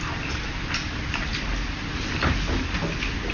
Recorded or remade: remade